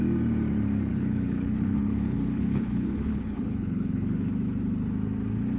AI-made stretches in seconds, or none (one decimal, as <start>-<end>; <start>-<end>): 0.9-4.3